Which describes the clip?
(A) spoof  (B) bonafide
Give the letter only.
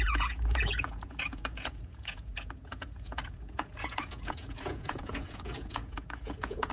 A